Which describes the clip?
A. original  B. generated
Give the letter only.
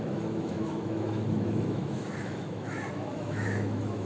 B